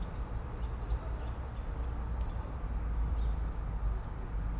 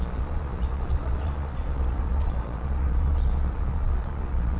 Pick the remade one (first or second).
second